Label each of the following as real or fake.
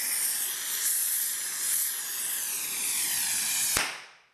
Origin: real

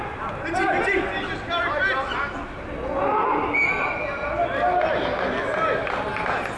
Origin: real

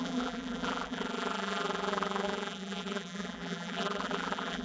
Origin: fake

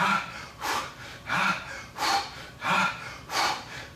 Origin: fake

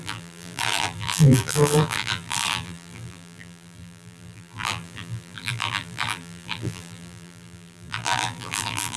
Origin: fake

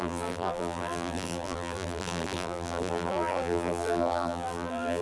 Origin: fake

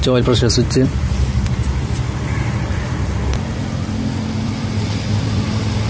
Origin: fake